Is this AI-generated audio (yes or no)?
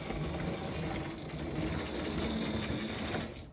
no